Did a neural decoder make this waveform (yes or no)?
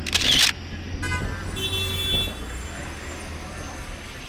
no